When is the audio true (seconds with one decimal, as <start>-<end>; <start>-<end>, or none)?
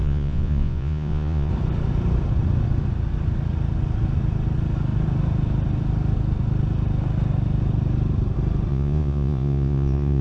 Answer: 1.5-8.7